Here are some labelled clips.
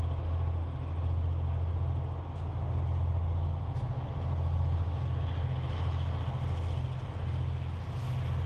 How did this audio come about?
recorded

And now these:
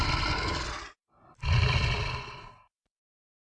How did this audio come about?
recorded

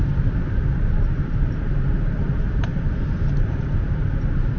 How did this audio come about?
remade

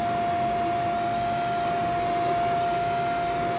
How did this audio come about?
recorded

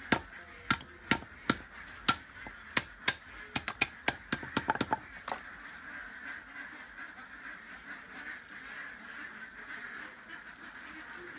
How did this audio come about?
recorded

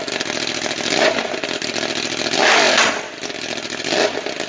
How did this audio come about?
recorded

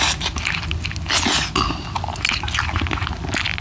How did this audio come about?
recorded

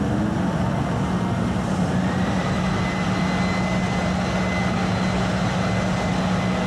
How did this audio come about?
recorded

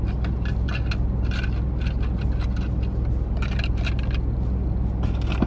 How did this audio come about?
recorded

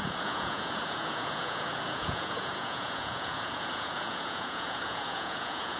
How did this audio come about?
remade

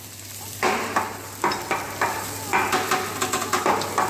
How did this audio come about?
recorded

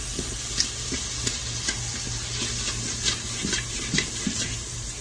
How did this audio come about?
recorded